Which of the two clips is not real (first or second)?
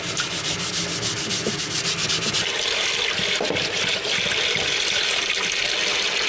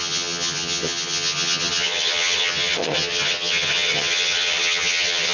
second